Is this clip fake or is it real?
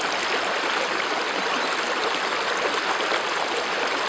real